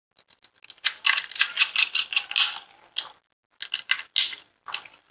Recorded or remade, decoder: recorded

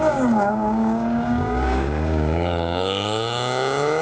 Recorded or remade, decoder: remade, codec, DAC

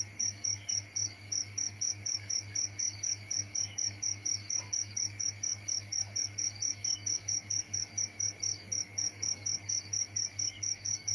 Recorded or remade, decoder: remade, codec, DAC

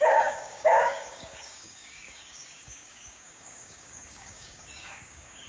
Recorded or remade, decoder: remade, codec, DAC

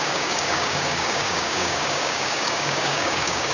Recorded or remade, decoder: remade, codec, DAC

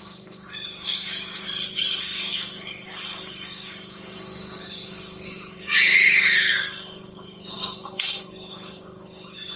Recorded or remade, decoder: remade, codec, DAC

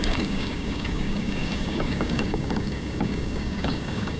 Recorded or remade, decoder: remade, codec, DAC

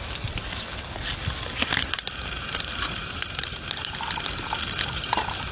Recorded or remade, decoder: recorded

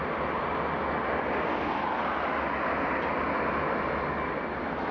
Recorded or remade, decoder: recorded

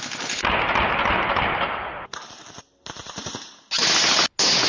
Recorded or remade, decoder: recorded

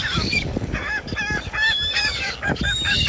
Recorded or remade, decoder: remade, codec, DAC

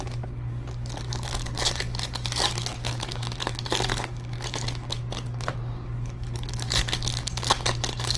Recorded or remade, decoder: remade, codec, DAC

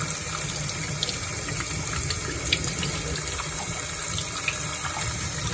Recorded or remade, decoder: recorded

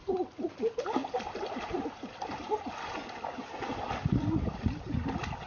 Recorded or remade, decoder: recorded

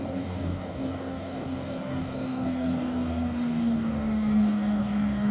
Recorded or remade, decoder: remade, codec, DAC